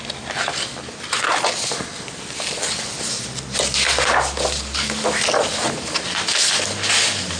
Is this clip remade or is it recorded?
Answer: recorded